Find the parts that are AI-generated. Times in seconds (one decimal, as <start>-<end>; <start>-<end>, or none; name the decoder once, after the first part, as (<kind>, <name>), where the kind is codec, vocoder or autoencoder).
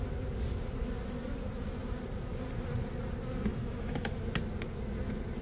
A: 3.5-4.2 (autoencoder, DAC-VAE)